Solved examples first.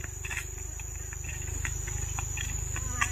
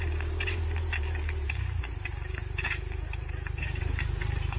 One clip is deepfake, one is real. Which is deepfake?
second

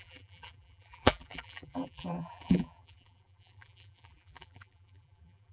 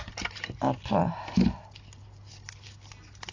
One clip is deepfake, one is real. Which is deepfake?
first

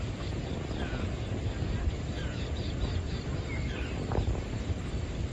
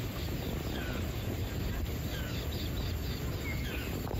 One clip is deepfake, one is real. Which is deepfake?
first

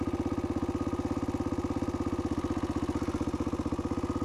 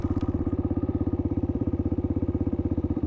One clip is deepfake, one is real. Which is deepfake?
second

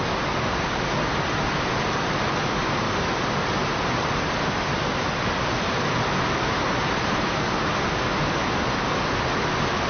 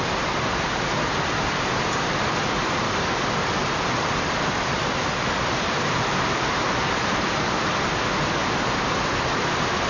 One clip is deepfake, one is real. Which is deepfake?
second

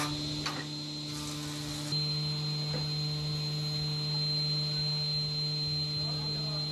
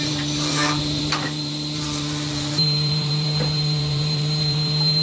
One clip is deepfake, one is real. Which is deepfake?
second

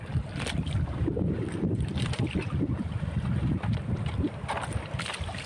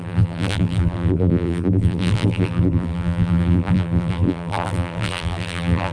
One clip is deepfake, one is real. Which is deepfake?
second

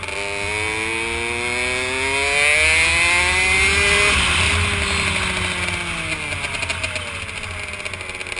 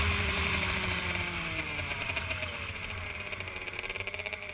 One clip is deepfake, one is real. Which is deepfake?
second